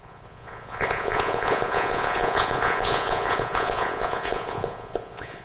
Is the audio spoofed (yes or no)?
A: yes